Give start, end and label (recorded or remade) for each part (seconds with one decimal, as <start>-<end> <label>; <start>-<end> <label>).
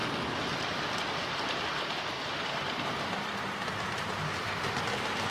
0.0-3.3 remade; 3.3-5.3 recorded